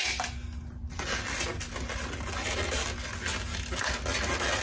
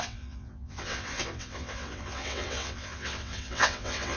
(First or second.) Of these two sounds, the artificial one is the second